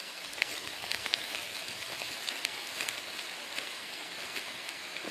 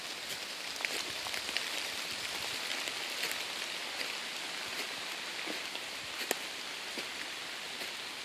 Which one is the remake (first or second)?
first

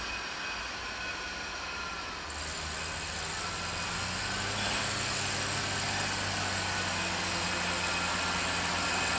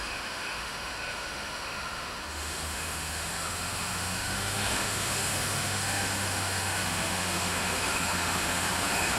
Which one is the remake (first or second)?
second